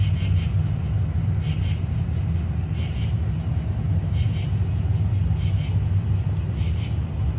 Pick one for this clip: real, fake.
real